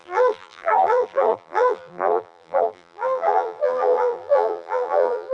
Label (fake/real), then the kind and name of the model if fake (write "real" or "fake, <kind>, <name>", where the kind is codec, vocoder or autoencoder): fake, vocoder, BigVGAN v2